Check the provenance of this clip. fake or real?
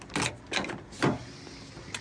real